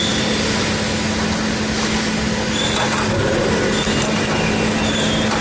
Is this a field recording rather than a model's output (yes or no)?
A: yes